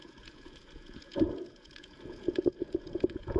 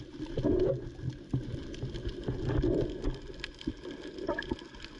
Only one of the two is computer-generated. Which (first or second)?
first